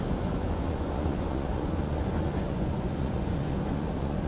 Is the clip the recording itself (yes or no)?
no